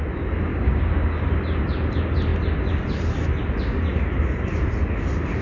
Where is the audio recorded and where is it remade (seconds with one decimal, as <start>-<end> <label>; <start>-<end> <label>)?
0.0-0.5 recorded; 0.5-1.2 remade; 1.2-5.4 recorded